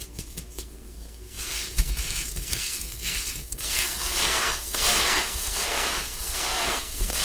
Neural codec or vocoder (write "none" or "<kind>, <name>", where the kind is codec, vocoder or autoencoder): codec, SNAC